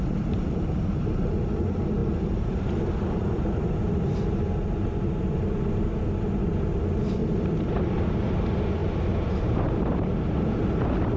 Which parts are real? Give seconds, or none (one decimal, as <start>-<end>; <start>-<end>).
0.0-2.0; 2.6-7.2; 8.0-11.2